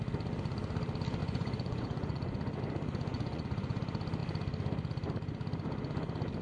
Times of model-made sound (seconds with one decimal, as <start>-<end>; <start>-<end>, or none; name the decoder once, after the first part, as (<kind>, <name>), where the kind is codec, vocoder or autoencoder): 1.2-2.6 (vocoder, Vocos); 3.1-3.8